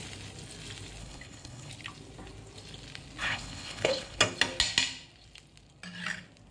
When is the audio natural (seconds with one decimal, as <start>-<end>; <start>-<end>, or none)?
0.0-1.0; 1.7-3.2; 4.2-6.5